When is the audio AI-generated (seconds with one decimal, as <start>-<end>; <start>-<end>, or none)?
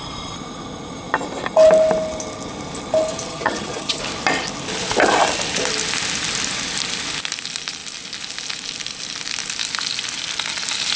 3.3-4.0